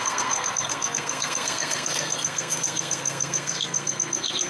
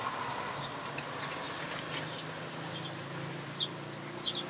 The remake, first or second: first